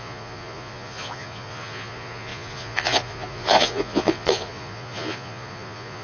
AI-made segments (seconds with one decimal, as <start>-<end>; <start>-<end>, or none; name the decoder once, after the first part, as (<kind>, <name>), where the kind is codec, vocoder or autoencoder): 0.0-6.0 (vocoder, Vocos)